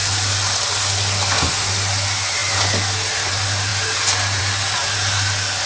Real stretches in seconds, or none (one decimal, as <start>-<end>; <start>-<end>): 0.0-5.7

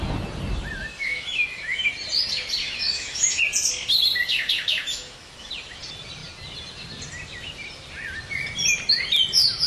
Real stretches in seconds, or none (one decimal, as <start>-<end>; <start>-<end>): 0.0-0.9; 1.9-2.6; 3.4-4.3; 5.5-9.7

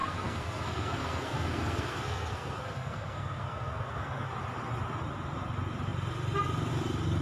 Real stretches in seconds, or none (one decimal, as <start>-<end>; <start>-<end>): 4.3-7.2

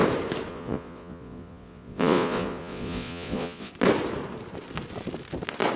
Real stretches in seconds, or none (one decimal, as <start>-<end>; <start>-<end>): 0.0-0.5; 3.7-5.8

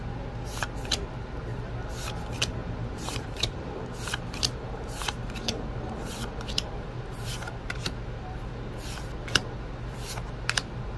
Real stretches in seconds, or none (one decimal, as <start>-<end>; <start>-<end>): 0.0-2.6; 7.3-11.0

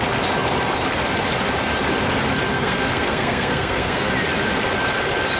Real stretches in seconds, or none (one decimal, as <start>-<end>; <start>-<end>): 0.0-2.5; 4.1-5.4

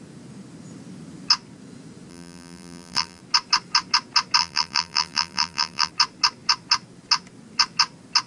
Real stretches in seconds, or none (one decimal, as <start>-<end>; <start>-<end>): 0.0-2.1; 3.2-4.4; 5.9-8.3

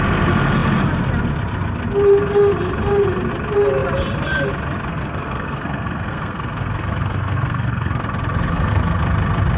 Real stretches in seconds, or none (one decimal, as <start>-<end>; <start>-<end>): 0.0-4.9; 8.0-8.5; 9.0-9.6